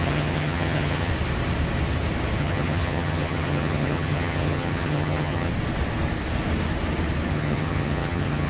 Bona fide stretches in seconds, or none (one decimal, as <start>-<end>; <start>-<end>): 1.1-2.4; 5.5-7.3

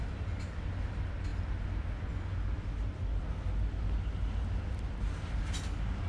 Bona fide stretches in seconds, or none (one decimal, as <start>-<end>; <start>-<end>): 0.0-6.1

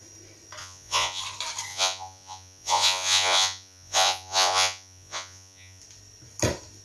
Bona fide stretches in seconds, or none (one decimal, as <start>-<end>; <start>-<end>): 0.0-0.6; 1.2-1.7; 5.8-6.8

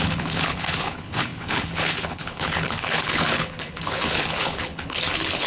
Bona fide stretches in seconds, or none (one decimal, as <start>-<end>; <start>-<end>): none

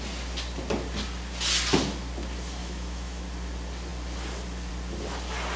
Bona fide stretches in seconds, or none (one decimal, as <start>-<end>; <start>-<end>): 0.0-2.6; 3.2-5.6

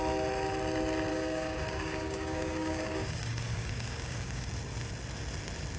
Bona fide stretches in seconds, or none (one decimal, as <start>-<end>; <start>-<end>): 0.0-1.1; 4.5-5.8

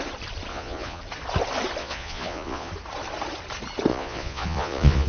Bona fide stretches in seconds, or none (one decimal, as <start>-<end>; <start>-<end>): 0.0-0.5; 1.0-1.8; 2.7-3.9